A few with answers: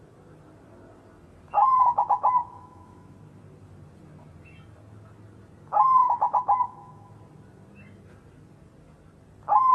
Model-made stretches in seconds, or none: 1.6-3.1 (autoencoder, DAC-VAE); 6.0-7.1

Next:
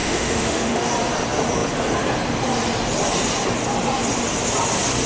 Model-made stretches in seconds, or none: 0.0-0.9 (autoencoder, DAC-VAE)

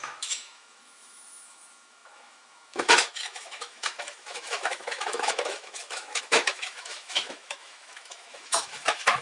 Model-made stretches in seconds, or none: 0.0-9.2 (autoencoder, DAC-VAE)

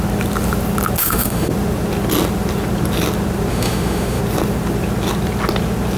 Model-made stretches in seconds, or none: 1.0-1.5 (autoencoder, DAC-VAE); 3.5-4.2

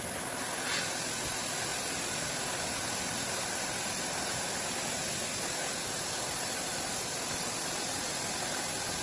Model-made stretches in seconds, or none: none

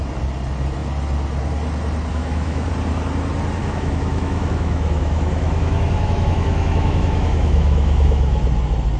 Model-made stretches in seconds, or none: 2.1-2.7 (autoencoder, DAC-VAE); 3.6-8.4

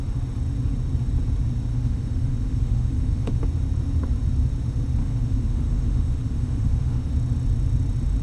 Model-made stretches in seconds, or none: 1.7-3.4 (autoencoder, DAC-VAE); 5.0-7.1